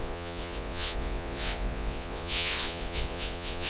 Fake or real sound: fake